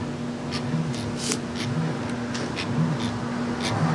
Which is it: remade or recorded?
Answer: recorded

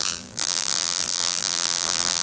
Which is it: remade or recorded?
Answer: remade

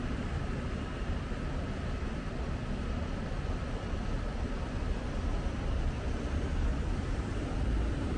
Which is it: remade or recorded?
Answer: remade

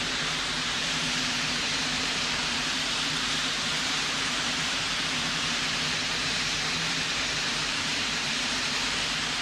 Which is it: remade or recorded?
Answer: remade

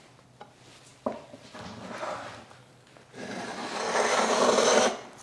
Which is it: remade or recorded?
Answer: recorded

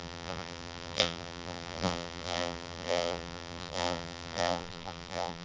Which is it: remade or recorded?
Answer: remade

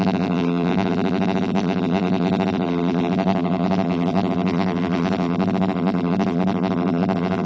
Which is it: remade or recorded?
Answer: remade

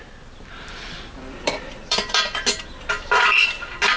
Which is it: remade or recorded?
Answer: remade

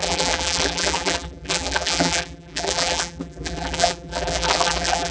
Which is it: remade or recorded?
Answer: remade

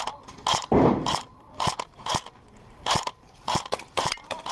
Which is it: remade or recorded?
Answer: remade